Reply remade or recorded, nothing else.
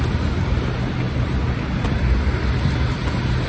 recorded